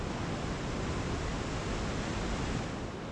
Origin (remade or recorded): recorded